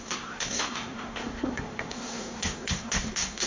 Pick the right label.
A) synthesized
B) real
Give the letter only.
A